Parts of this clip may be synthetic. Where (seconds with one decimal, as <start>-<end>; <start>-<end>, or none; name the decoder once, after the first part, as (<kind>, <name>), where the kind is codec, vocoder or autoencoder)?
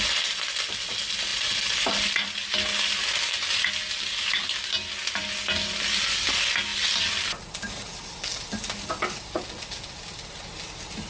none